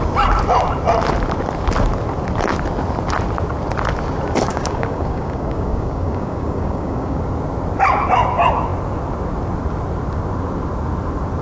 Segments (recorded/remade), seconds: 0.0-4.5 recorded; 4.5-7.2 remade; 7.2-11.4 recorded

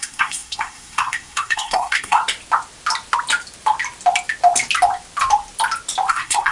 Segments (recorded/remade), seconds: 0.0-2.2 remade; 2.2-6.1 recorded; 6.1-6.5 remade

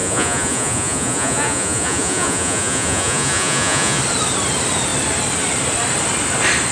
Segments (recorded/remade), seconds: 0.0-4.0 remade; 4.0-6.7 recorded

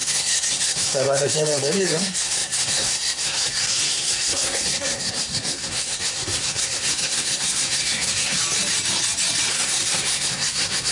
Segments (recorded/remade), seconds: 0.0-8.4 remade; 8.4-9.5 recorded; 9.5-10.9 remade